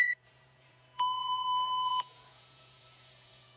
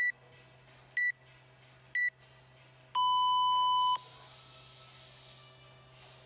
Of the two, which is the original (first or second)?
second